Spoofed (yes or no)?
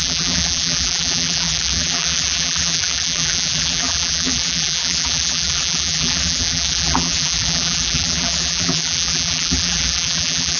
yes